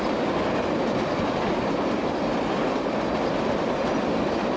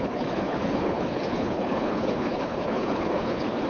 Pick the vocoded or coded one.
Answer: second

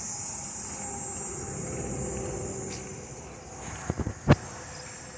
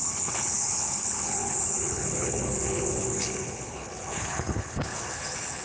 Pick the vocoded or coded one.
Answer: second